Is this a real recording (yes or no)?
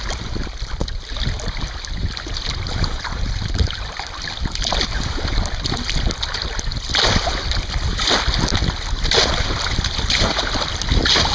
yes